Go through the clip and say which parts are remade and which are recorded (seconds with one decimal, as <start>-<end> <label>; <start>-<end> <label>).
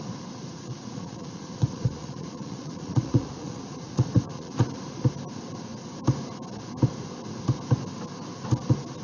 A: 0.0-0.5 recorded; 0.5-5.0 remade; 5.0-9.0 recorded